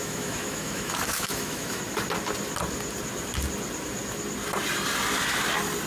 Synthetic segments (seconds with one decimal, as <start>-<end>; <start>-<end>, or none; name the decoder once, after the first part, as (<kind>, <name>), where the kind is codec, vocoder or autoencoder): 0.0-1.8 (autoencoder, DAC-VAE)